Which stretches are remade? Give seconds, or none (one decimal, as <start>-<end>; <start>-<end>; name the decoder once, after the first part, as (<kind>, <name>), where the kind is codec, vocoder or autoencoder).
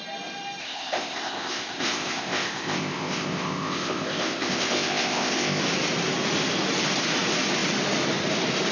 0.6-5.6 (codec, ZipCodec)